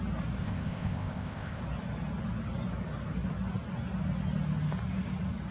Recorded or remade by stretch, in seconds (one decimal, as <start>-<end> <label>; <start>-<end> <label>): 0.0-0.4 recorded; 0.4-1.6 remade; 1.6-5.5 recorded